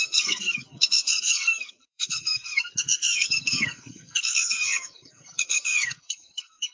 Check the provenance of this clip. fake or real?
fake